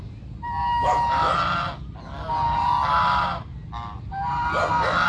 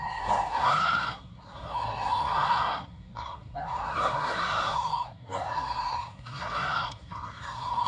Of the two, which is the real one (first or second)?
first